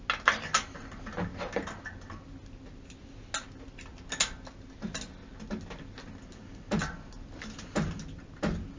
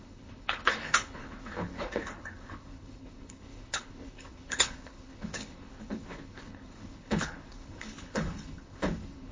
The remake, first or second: second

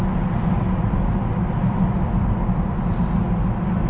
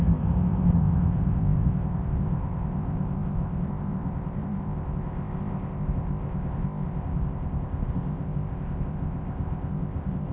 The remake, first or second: second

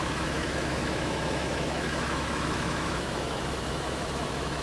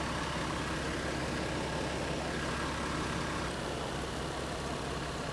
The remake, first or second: first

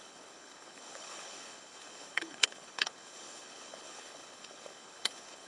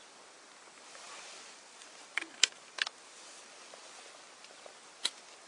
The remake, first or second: first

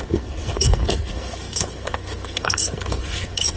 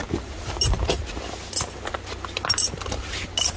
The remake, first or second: first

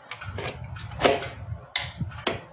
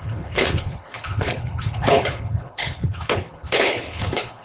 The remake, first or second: second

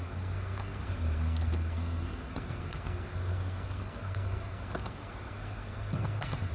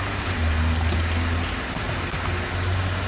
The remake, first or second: first